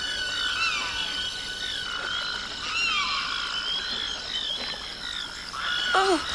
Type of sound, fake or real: real